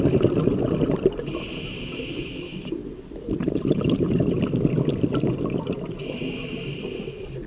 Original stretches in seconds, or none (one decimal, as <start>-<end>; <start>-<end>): 0.0-3.4; 4.2-6.4; 7.1-7.5